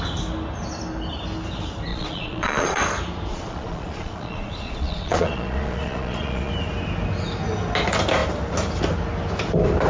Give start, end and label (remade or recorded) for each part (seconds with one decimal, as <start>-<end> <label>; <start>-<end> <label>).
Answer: 0.0-1.9 recorded; 1.9-2.8 remade; 2.8-3.3 recorded; 3.3-6.5 remade; 6.5-9.9 recorded